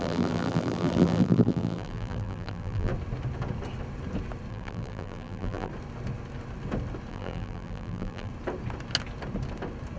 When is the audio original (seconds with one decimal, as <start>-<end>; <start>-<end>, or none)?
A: 2.9-4.5; 5.7-7.1; 8.3-10.0